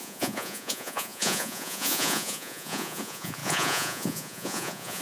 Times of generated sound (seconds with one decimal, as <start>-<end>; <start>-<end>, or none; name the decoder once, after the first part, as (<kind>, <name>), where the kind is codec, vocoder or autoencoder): 0.0-5.0 (vocoder, Vocos)